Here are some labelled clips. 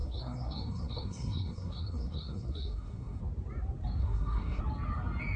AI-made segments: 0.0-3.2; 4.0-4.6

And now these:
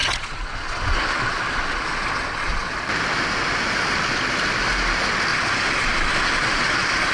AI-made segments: 0.0-2.7; 5.3-7.1

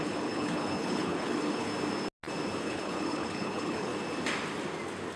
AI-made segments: 0.0-1.7; 2.6-3.9

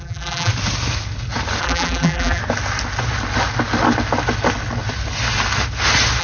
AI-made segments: 0.0-0.5; 1.6-2.4

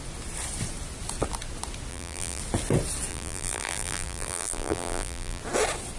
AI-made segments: 1.9-2.4; 3.1-5.4